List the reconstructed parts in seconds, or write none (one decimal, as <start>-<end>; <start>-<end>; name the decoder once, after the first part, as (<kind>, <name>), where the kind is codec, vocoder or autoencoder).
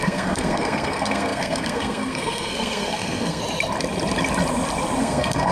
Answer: 0.0-3.4 (codec, SNAC); 5.0-5.5